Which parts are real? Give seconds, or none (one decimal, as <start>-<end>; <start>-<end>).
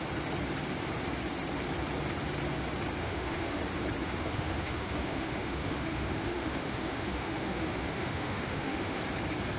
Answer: 0.0-3.0; 3.6-4.0; 9.0-9.6